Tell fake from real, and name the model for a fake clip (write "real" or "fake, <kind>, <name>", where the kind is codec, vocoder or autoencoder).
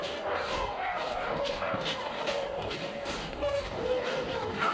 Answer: fake, codec, DAC